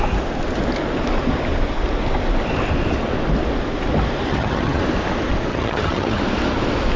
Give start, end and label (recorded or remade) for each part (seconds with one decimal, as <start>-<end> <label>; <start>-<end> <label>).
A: 0.0-4.3 recorded; 4.3-4.8 remade; 4.8-5.5 recorded; 5.5-6.2 remade; 6.2-7.0 recorded

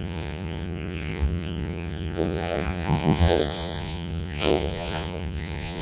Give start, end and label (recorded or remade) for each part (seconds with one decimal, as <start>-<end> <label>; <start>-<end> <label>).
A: 0.0-5.8 remade

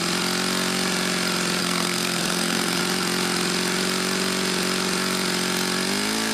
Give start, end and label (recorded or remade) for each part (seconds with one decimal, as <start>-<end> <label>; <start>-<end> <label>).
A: 0.0-1.6 recorded; 1.6-2.8 remade; 2.8-6.3 recorded

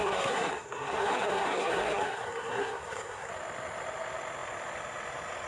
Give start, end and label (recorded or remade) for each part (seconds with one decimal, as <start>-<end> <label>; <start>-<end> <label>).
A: 0.0-3.3 remade; 3.3-5.5 recorded

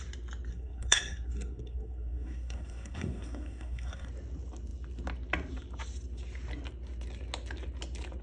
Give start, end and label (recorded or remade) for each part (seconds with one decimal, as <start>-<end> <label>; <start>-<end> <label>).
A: 0.0-0.5 recorded; 0.5-4.1 remade; 4.1-8.2 recorded